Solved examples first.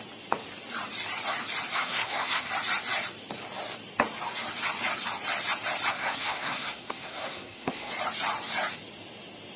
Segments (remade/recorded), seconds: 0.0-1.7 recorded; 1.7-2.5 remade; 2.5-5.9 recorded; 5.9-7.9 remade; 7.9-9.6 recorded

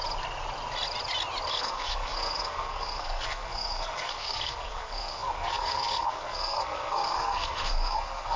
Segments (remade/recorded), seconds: 0.0-1.5 recorded; 1.5-8.4 remade